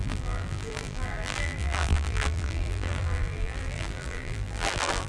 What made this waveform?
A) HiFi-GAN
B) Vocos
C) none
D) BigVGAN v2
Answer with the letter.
D